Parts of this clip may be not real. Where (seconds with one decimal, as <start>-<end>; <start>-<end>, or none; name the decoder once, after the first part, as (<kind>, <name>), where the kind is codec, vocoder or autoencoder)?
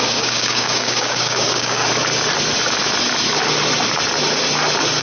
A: 0.0-1.8 (codec, DAC)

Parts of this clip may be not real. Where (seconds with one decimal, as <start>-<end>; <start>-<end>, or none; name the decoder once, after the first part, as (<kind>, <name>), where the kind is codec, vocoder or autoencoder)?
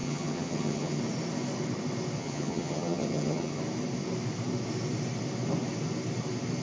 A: 0.0-1.0 (vocoder, HiFi-GAN); 2.2-3.6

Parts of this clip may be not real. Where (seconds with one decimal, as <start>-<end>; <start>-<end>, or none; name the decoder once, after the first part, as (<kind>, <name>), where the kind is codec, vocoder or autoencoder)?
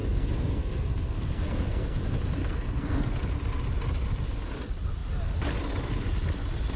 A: 0.0-2.0 (codec, SNAC); 2.4-3.1